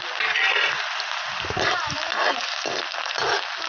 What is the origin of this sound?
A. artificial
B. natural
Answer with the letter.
B